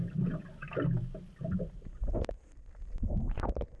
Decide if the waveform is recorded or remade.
remade